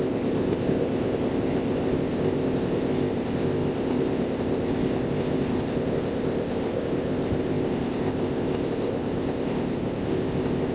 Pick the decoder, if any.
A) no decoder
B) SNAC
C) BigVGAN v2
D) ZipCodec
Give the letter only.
D